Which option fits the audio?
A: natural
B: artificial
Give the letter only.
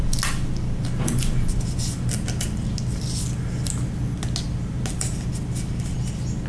A